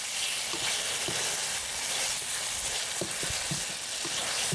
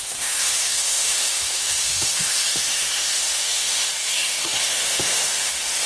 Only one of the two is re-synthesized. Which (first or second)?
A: second